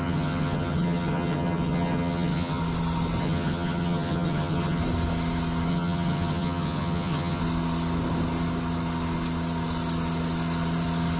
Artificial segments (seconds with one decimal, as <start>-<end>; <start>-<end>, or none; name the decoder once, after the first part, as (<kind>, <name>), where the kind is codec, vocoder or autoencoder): 0.0-2.6 (vocoder, HiFi-GAN); 3.2-4.8; 5.7-7.4